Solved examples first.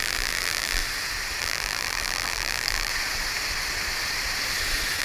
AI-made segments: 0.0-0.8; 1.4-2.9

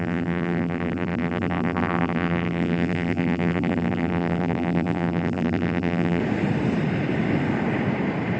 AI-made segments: 0.0-6.2

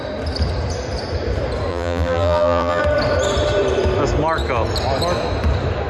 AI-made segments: 1.7-2.8

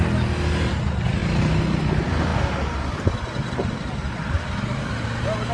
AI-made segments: none